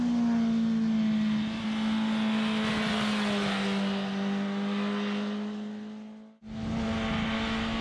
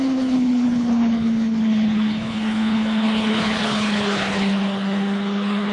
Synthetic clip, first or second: second